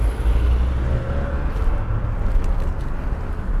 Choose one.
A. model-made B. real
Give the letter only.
B